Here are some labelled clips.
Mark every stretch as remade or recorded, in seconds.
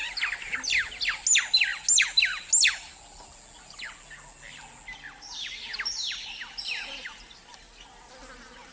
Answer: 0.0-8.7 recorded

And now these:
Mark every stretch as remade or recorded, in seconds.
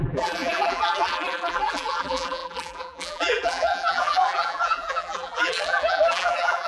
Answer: 0.0-6.7 remade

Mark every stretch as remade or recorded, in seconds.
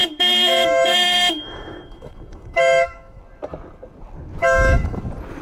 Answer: 0.0-3.2 remade; 3.2-4.4 recorded; 4.4-5.0 remade; 5.0-5.4 recorded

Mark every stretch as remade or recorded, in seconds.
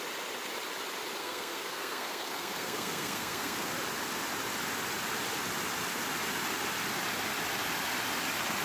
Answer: 0.0-1.2 recorded; 1.2-3.7 remade; 3.7-8.6 recorded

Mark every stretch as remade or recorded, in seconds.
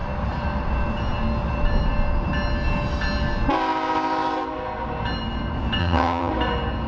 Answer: 0.0-5.8 recorded; 5.8-6.3 remade; 6.3-6.9 recorded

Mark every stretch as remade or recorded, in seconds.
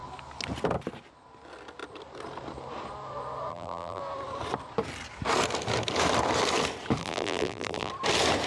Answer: 0.0-3.5 recorded; 3.5-4.0 remade; 4.0-7.0 recorded; 7.0-7.9 remade; 7.9-8.5 recorded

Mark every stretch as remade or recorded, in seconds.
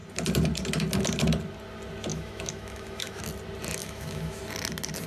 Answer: 0.0-2.1 recorded; 2.1-3.2 remade; 3.2-3.8 recorded; 3.8-4.4 remade; 4.4-5.1 recorded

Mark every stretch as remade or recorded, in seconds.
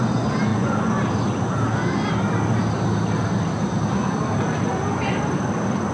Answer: 0.0-0.5 recorded; 0.5-1.0 remade; 1.0-5.9 recorded